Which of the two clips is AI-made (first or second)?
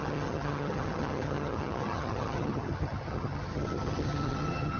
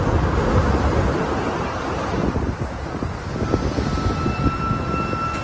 first